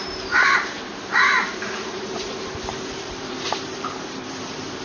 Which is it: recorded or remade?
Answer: remade